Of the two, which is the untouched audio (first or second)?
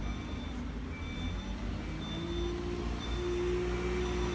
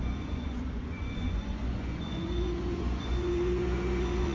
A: first